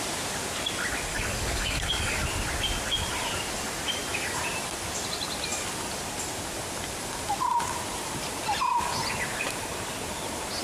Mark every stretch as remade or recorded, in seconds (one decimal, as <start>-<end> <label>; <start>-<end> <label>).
0.0-1.1 recorded; 1.1-2.2 remade; 2.2-10.6 recorded